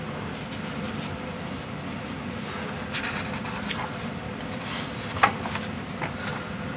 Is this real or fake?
real